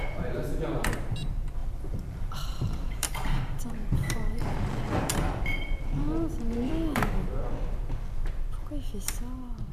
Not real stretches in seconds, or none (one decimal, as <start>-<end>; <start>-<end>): 1.6-6.7